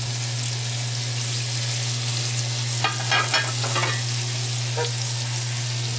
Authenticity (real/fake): real